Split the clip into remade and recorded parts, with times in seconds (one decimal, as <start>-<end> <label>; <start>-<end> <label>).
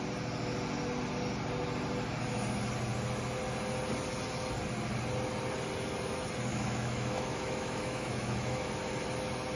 0.0-6.5 recorded; 6.5-8.7 remade; 8.7-9.6 recorded